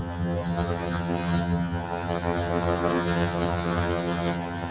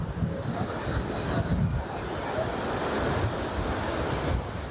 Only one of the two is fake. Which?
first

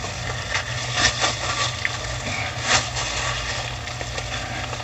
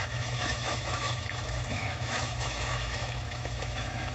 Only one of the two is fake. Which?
second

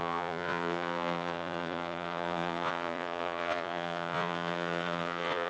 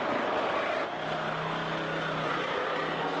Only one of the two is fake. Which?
first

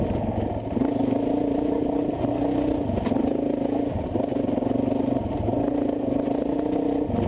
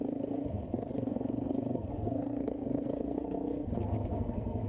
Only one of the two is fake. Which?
second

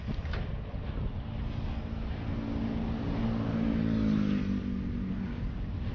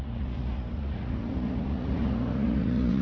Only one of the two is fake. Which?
second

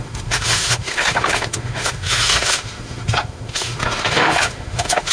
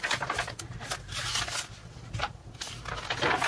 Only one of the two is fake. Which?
first